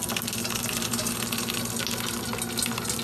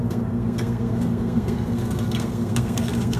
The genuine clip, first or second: first